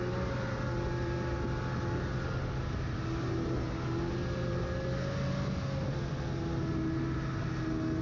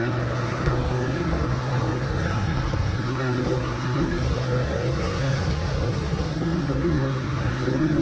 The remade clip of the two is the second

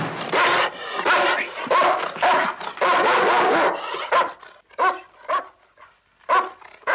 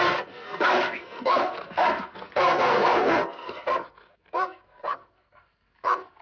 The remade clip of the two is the second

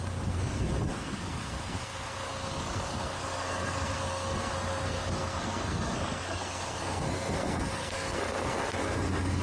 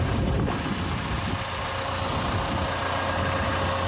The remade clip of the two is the first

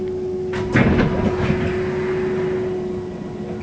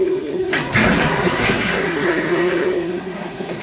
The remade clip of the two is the second